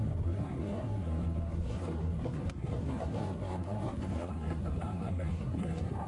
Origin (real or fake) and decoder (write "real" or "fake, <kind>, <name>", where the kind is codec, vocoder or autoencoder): fake, codec, SNAC